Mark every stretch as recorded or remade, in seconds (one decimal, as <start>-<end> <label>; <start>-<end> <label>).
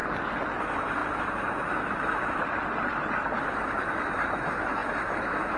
0.0-0.6 recorded; 0.6-2.4 remade; 2.4-3.4 recorded; 3.4-5.6 remade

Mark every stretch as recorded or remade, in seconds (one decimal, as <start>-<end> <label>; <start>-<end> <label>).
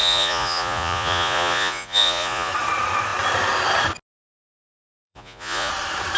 0.0-2.5 remade; 2.5-4.5 recorded; 4.5-5.7 remade; 5.7-6.2 recorded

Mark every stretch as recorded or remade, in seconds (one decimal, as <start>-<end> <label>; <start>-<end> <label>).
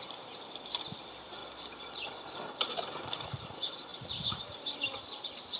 0.0-1.4 remade; 1.4-2.3 recorded; 2.3-5.6 remade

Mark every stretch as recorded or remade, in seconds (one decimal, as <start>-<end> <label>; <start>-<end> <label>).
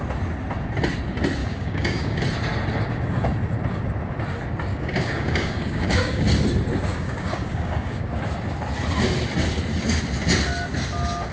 0.0-1.4 recorded; 1.4-2.2 remade; 2.2-4.7 recorded; 4.7-6.2 remade; 6.2-6.9 recorded; 6.9-8.1 remade; 8.1-11.3 recorded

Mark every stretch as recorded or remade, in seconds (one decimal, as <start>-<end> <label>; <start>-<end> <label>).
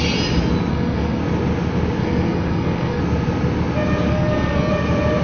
0.0-0.7 recorded; 0.7-1.2 remade; 1.2-2.0 recorded; 2.0-3.0 remade; 3.0-4.1 recorded; 4.1-4.7 remade; 4.7-5.2 recorded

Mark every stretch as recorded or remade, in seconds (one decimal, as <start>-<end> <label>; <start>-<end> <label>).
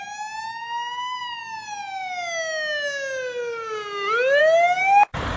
0.0-5.4 recorded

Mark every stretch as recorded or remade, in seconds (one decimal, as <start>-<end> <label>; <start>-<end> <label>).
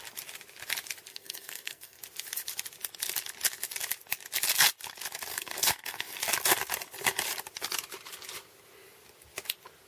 0.0-1.1 recorded; 1.1-2.0 remade; 2.0-5.3 recorded; 5.3-6.2 remade; 6.2-9.9 recorded